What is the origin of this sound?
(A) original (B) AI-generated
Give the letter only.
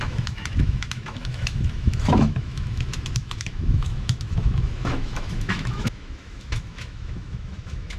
B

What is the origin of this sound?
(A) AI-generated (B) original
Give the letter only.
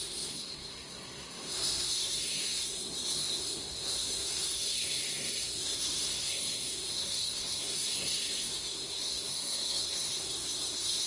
A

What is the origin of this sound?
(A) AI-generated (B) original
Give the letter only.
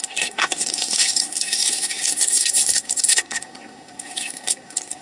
A